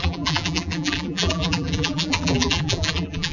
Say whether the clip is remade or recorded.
remade